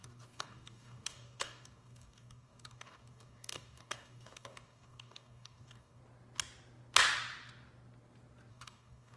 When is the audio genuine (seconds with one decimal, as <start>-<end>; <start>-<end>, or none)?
6.0-8.5